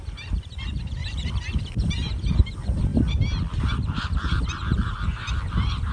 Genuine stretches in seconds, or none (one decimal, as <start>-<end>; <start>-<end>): 2.9-3.6

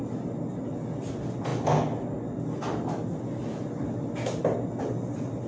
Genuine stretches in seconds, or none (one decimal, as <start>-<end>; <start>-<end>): 0.0-5.5

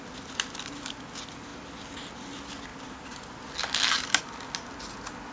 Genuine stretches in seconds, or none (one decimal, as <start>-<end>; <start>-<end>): 0.0-5.3

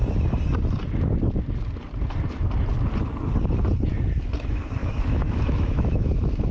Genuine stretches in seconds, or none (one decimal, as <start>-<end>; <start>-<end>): 0.0-4.8

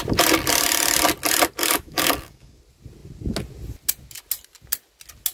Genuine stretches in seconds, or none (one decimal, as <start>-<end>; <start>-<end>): 0.0-1.6; 2.6-5.3